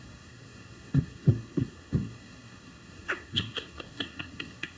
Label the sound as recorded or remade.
remade